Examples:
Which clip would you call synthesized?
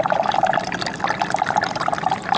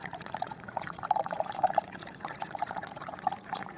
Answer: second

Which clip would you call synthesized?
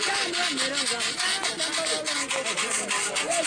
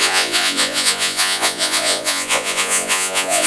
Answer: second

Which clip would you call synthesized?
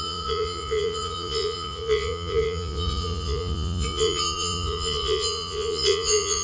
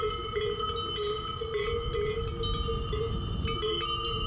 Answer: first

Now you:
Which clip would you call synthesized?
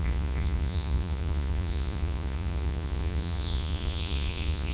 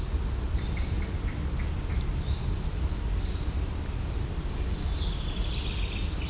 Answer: first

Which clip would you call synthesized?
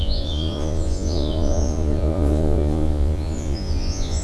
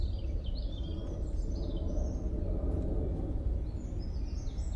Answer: first